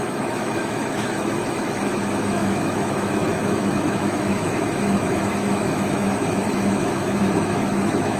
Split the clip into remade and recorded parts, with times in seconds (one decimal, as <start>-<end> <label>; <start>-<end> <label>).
0.0-8.2 remade